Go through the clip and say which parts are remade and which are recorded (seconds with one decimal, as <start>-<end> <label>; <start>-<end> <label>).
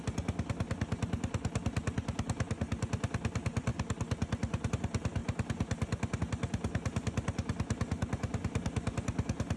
0.0-9.6 recorded